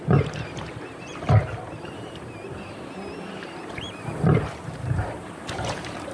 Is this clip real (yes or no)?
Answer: no